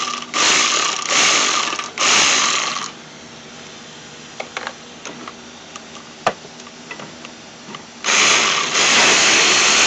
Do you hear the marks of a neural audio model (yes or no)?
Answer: no